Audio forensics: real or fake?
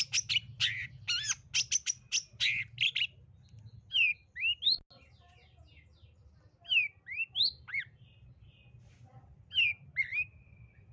real